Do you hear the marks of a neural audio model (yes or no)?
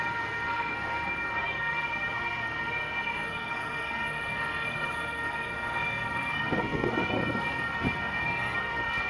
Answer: yes